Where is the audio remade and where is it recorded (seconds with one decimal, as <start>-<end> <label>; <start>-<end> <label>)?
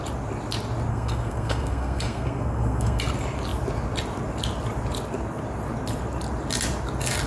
0.0-0.9 recorded; 0.9-3.0 remade; 3.0-7.3 recorded